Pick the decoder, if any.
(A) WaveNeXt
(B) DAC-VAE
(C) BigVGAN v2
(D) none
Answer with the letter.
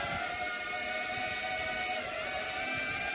D